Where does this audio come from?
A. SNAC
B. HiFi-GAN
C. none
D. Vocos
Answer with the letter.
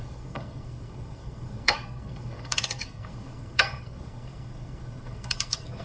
A